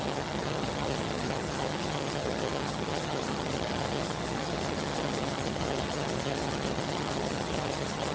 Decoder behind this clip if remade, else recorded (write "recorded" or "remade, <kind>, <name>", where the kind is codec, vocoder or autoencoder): remade, vocoder, HiFi-GAN